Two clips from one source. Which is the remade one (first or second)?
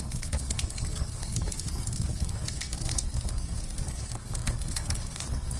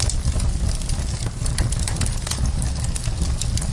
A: first